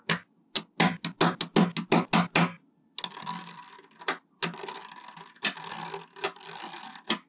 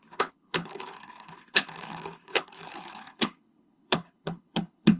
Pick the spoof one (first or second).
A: second